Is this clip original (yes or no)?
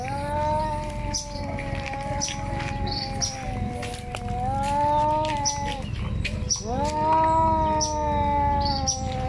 yes